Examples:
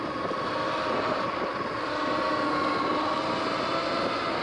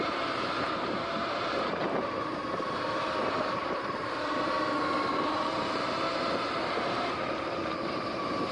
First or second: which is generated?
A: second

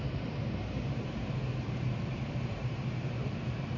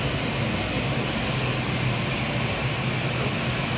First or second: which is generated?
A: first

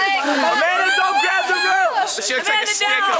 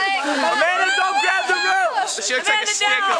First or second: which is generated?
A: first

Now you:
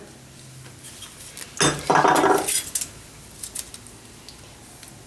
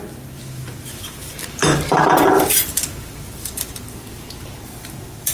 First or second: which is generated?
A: second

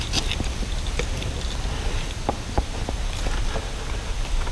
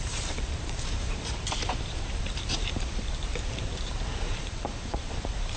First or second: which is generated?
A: second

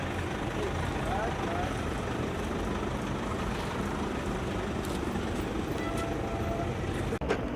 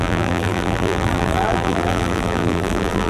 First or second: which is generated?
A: second